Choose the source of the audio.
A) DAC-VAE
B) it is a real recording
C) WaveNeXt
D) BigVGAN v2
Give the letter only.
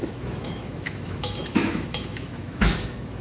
A